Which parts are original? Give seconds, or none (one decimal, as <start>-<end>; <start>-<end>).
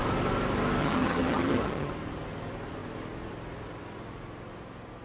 0.0-0.8; 1.9-5.0